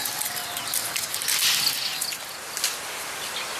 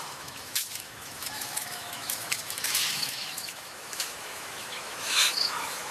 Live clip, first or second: first